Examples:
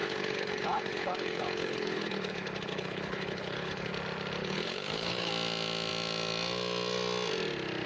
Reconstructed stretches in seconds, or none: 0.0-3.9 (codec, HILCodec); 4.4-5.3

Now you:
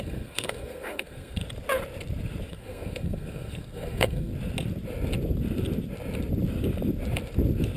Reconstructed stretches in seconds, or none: 0.0-1.4 (codec, SNAC); 2.5-4.3

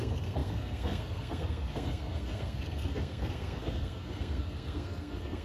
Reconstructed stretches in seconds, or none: 0.0-5.4 (codec, SNAC)

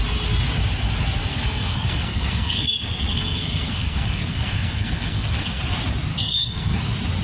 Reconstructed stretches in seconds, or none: 1.3-5.6 (codec, SNAC); 6.1-6.8

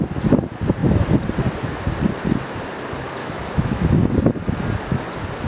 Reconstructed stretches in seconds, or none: 3.2-3.9 (autoencoder, DAC-VAE)

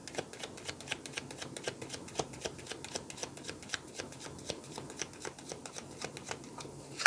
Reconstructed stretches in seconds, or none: none

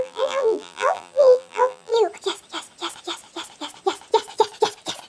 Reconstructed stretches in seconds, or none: 0.0-1.9 (vocoder, BigVGAN v2)